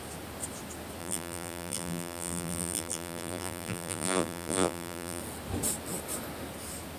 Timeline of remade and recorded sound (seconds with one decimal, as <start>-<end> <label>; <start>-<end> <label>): 0.0-1.0 recorded; 1.0-5.2 remade; 5.2-7.0 recorded